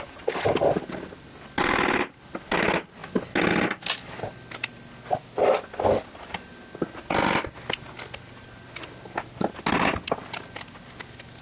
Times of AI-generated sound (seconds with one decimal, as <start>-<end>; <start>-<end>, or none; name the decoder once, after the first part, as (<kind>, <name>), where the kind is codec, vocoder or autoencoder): none